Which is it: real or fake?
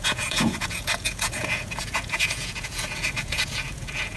fake